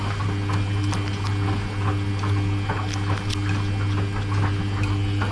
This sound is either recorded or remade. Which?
recorded